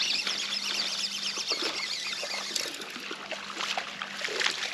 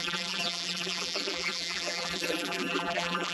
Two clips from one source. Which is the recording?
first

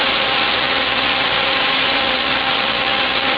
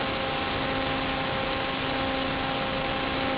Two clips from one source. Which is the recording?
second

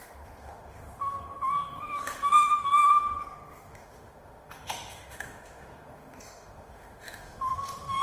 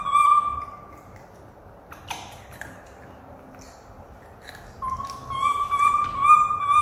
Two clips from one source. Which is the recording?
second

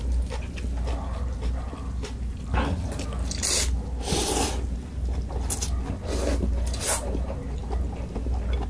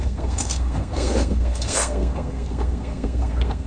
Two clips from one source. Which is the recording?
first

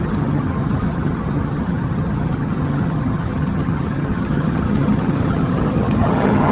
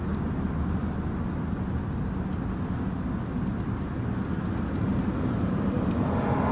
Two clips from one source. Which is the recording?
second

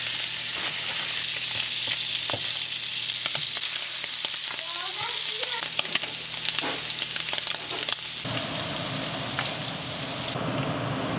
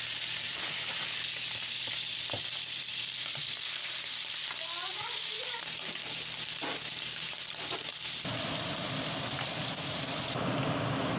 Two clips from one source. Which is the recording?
first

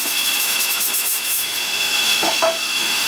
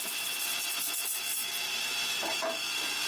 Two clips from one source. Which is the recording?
second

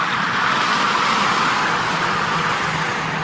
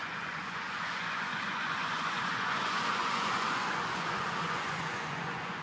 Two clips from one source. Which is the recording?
first